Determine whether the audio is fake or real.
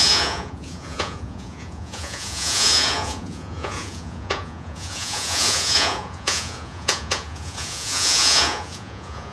fake